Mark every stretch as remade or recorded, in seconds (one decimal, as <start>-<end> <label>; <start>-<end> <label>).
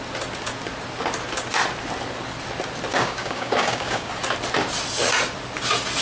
0.0-2.9 recorded; 2.9-4.1 remade; 4.1-6.0 recorded